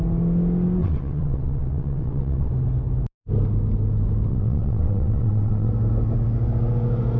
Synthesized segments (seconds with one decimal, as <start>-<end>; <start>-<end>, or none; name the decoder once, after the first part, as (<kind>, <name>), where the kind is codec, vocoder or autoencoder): 0.8-2.5 (vocoder, WaveNeXt); 4.3-5.7